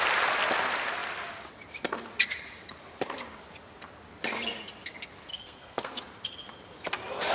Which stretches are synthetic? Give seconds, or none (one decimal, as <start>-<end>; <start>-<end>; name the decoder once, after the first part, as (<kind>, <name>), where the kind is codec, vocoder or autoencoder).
5.3-6.0 (codec, SNAC)